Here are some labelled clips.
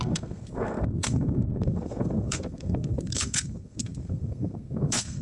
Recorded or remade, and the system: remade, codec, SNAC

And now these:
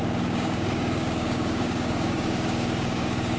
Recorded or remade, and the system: remade, codec, DAC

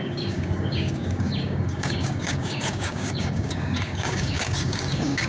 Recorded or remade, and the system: remade, codec, DAC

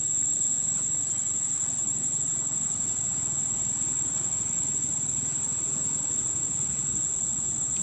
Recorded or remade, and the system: recorded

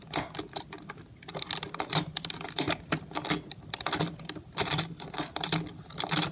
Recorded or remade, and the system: recorded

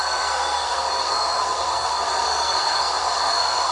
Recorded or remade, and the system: remade, codec, SNAC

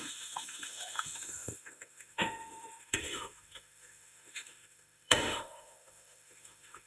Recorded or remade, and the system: remade, autoencoder, DAC-VAE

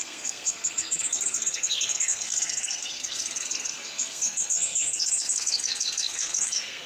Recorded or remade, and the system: remade, codec, SNAC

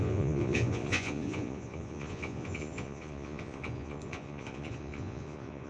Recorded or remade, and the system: remade, vocoder, Vocos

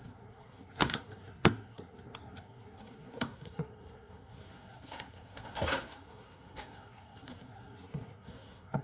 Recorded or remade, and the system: remade, codec, SNAC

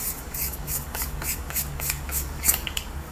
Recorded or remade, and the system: remade, codec, DAC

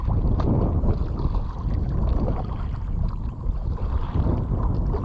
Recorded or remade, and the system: recorded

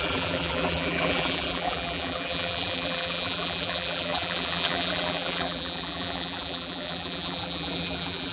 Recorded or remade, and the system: remade, vocoder, BigVGAN v2